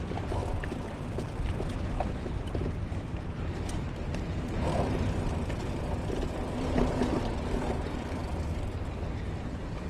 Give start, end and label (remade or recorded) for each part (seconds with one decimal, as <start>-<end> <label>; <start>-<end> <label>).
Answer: 0.0-0.4 recorded; 0.4-1.8 remade; 1.8-9.9 recorded